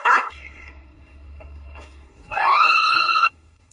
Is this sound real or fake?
fake